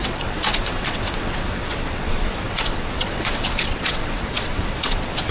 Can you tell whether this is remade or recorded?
remade